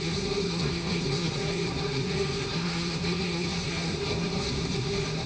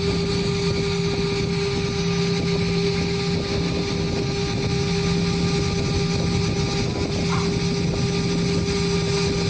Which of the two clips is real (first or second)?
second